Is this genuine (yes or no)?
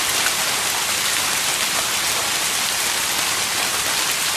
yes